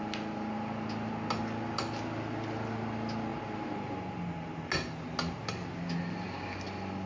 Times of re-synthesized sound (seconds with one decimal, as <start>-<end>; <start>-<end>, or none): none

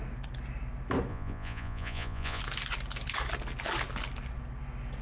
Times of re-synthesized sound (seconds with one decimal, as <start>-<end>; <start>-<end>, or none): 1.1-2.4

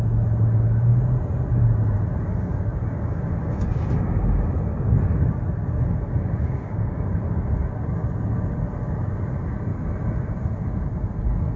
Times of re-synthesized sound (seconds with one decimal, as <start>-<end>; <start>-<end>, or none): none